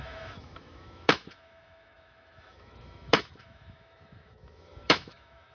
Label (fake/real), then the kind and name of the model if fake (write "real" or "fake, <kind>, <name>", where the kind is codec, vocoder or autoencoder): fake, autoencoder, DAC-VAE